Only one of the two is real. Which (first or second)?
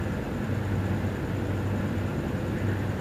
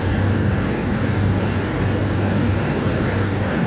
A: first